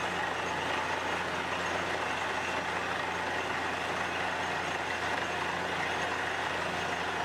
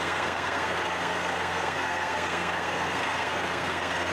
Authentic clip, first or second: first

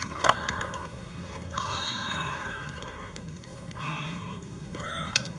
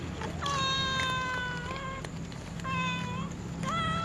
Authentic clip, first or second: second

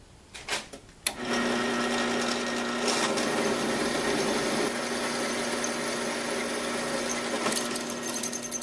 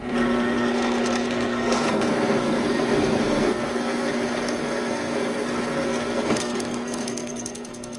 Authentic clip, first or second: first